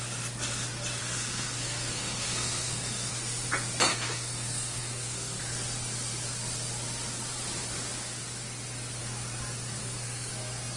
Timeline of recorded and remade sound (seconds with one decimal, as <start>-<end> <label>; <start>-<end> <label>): 0.0-1.0 recorded; 1.0-3.1 remade; 3.1-3.9 recorded; 3.9-5.4 remade; 5.4-9.8 recorded; 9.8-10.3 remade; 10.3-10.8 recorded